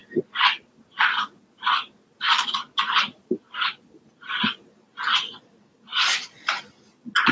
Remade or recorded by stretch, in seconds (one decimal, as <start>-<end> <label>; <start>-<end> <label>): 0.0-7.3 recorded